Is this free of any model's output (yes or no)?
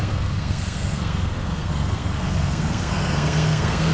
no